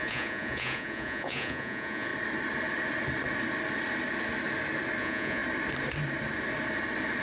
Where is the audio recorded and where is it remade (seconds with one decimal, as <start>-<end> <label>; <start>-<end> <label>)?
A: 0.0-2.1 remade; 2.1-5.0 recorded; 5.0-5.4 remade; 5.4-7.2 recorded

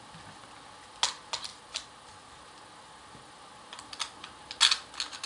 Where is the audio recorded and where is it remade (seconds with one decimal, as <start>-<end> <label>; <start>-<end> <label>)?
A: 0.0-5.3 recorded

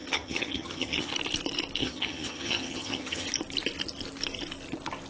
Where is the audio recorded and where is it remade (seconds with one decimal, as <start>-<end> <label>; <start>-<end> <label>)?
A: 0.0-1.1 remade; 1.1-1.8 recorded; 1.8-3.3 remade; 3.3-5.1 recorded

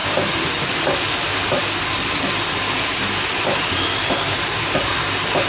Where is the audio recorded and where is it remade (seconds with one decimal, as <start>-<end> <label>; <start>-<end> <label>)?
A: 0.0-5.5 recorded

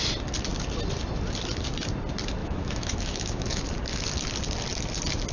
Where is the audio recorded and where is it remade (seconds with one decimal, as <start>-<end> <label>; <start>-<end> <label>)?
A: 0.0-2.4 recorded; 2.4-3.6 remade; 3.6-5.3 recorded